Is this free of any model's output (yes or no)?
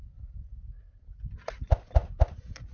yes